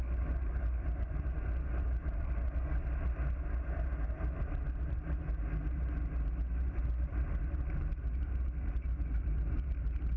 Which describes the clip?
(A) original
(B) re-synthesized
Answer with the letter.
A